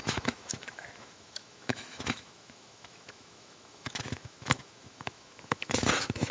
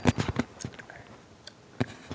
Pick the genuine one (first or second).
second